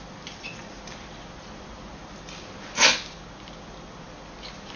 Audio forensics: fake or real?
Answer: real